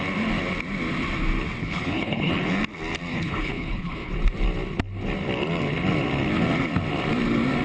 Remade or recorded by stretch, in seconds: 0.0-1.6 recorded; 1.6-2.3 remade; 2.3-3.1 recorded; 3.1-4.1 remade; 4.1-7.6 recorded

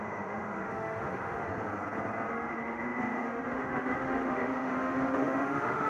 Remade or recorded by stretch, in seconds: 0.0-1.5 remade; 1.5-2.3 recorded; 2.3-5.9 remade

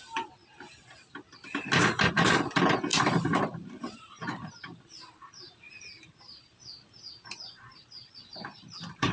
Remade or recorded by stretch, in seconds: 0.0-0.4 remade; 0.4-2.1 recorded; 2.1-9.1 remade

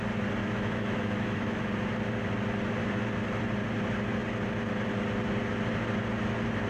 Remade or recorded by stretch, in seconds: 0.0-0.4 recorded; 0.4-1.7 remade; 1.7-6.7 recorded